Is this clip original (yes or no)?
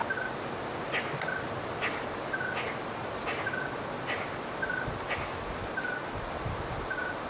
yes